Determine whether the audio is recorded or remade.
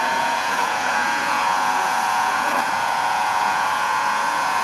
remade